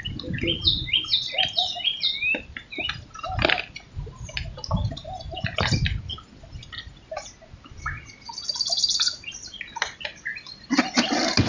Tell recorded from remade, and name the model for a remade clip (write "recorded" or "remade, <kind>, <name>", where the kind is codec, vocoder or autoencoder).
recorded